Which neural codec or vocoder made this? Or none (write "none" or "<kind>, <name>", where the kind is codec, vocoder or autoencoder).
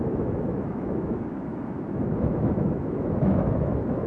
autoencoder, DAC-VAE